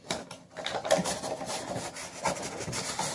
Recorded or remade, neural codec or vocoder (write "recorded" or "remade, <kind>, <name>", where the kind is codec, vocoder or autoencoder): recorded